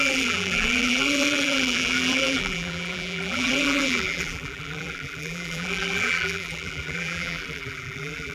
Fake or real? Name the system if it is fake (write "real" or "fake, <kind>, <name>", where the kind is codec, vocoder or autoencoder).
fake, vocoder, BigVGAN v2